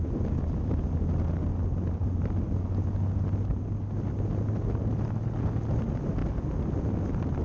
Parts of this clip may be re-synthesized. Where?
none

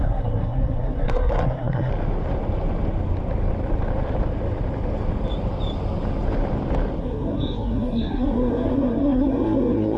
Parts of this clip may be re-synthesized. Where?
0.0-1.9; 7.0-10.0

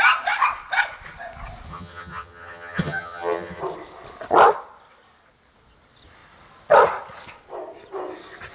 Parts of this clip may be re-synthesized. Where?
1.7-3.6

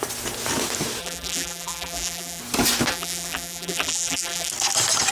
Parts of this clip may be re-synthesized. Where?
1.0-2.4; 2.9-4.5

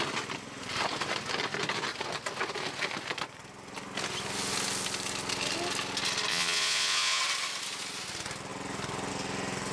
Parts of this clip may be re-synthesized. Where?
6.3-7.2

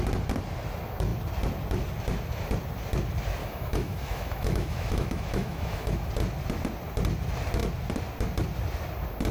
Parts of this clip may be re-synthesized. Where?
3.4-6.1